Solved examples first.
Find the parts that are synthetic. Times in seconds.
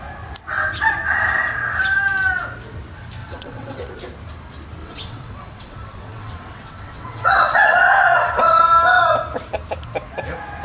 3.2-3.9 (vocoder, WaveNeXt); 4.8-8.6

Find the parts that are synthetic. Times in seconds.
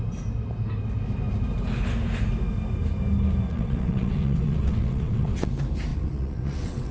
3.5-5.5 (vocoder, WaveNeXt); 5.9-6.9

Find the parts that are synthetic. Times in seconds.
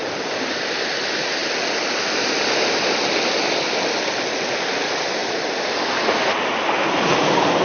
none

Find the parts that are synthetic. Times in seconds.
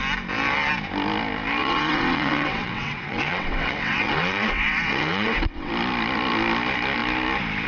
1.6-5.7 (vocoder, WaveNeXt)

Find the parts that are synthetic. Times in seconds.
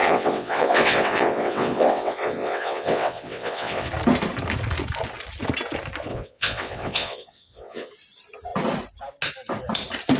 0.0-3.9 (vocoder, WaveNeXt); 6.1-7.9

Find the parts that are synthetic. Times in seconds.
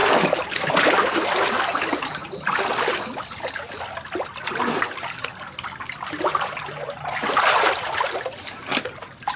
none